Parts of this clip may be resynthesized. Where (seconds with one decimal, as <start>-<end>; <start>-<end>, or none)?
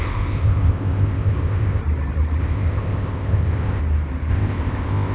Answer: 0.0-1.8; 2.4-3.8; 4.3-5.1